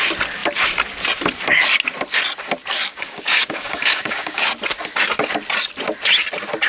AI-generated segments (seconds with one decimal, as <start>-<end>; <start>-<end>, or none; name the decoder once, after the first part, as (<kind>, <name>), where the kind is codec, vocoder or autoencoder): 2.9-4.4 (codec, DAC)